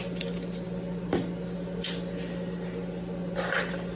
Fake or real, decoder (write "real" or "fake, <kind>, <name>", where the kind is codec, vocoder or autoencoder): real